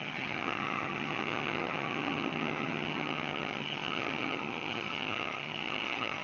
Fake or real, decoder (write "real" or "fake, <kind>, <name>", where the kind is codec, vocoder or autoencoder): fake, vocoder, HiFi-GAN